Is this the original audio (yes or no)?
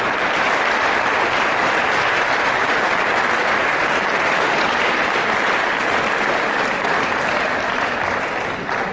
yes